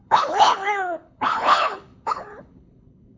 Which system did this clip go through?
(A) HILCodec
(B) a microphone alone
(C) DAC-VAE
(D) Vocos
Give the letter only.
A